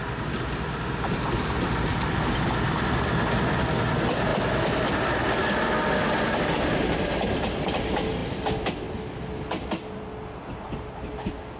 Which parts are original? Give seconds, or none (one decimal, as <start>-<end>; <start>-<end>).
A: 0.0-11.6